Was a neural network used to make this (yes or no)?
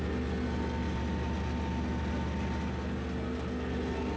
no